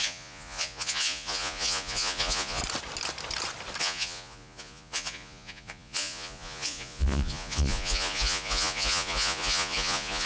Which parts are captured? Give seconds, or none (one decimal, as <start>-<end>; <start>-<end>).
2.6-3.8